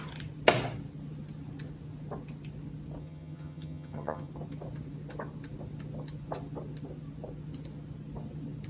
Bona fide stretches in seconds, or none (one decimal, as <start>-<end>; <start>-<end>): 0.0-3.0; 4.3-8.7